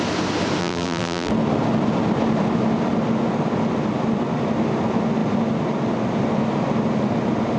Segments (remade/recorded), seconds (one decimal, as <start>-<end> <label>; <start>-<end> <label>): 0.0-0.6 recorded; 0.6-1.3 remade; 1.3-7.6 recorded